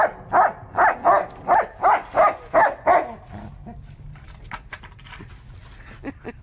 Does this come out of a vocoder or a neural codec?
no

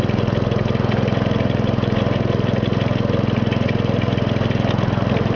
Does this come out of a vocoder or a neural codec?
no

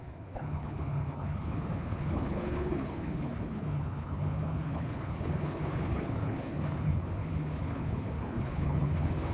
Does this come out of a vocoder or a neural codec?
yes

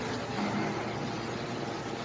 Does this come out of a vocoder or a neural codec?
no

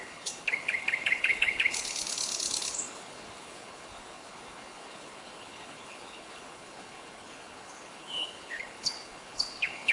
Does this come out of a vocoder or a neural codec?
yes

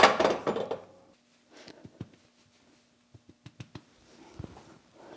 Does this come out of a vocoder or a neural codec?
no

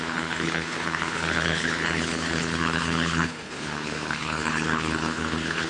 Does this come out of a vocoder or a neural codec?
yes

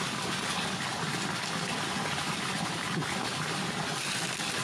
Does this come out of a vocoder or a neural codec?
no